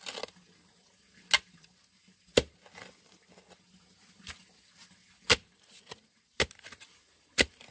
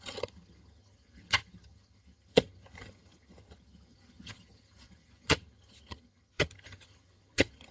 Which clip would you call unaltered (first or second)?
first